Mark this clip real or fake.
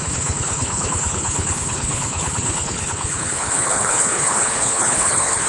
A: fake